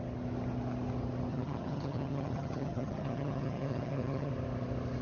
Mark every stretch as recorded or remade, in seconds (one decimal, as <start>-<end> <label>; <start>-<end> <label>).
0.0-1.3 recorded; 1.3-4.3 remade; 4.3-5.0 recorded